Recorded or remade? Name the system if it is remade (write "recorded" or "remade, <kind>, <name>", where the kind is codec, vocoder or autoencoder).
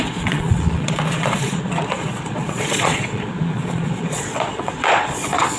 remade, vocoder, Vocos